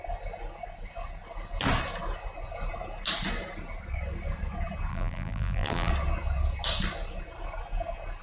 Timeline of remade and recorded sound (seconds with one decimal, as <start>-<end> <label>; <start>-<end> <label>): 0.0-4.9 recorded; 4.9-5.9 remade; 5.9-8.2 recorded